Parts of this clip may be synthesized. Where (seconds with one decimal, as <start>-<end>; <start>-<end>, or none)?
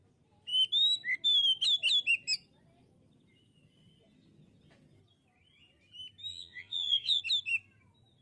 6.3-7.2